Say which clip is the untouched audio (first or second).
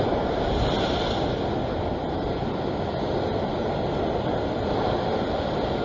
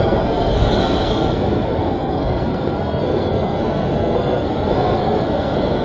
first